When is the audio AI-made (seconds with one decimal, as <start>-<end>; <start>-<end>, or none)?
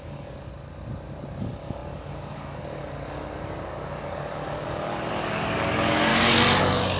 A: 0.0-0.5; 1.4-6.1; 6.6-7.0